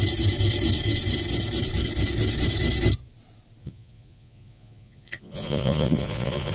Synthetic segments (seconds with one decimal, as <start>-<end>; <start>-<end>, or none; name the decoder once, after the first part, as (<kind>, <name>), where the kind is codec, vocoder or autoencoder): 3.6-6.5 (vocoder, Vocos)